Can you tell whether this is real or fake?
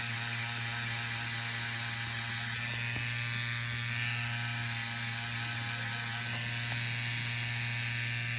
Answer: real